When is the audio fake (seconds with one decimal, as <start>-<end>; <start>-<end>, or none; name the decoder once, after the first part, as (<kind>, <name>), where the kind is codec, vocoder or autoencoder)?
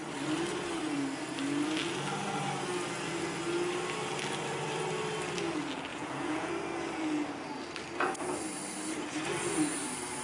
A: 5.9-6.5 (vocoder, Vocos)